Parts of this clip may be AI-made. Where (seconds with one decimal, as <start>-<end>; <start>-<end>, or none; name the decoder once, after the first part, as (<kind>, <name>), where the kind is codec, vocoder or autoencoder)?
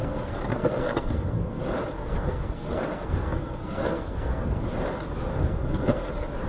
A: 0.0-1.6 (codec, SNAC); 2.0-4.6; 5.3-6.1